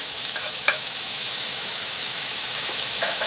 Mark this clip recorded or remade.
remade